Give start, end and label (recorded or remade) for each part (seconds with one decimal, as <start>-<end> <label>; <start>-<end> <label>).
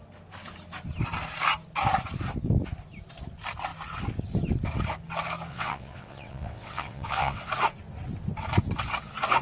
0.0-5.5 recorded; 5.5-7.5 remade; 7.5-9.4 recorded